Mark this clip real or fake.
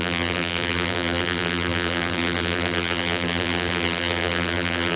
fake